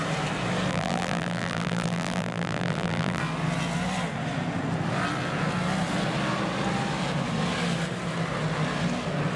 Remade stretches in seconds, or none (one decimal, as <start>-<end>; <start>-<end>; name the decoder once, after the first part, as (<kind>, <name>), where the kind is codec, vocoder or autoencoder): 0.7-3.2 (vocoder, BigVGAN v2)

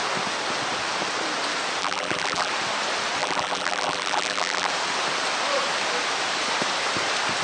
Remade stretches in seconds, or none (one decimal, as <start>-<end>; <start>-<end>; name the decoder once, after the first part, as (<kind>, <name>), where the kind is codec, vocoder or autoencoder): 1.8-2.5 (vocoder, BigVGAN v2); 3.2-4.7